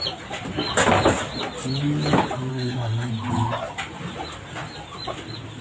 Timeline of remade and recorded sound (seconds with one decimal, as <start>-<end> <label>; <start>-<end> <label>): 0.0-2.5 recorded; 2.5-3.1 remade; 3.1-5.6 recorded